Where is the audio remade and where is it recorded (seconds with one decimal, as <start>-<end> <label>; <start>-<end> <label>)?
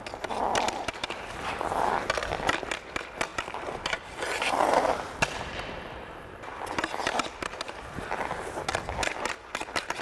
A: 0.0-10.0 recorded